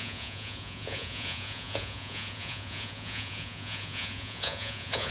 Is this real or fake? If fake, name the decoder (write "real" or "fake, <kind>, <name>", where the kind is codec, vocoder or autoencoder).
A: fake, vocoder, Vocos